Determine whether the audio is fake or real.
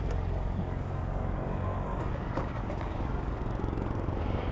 fake